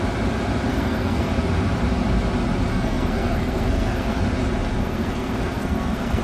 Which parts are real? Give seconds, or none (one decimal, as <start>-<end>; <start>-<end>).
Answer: 0.0-0.7; 1.3-2.7; 4.2-4.8